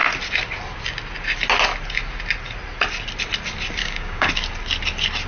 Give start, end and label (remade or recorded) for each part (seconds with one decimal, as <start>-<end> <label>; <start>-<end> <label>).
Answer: 0.0-3.8 recorded; 3.8-4.3 remade; 4.3-5.3 recorded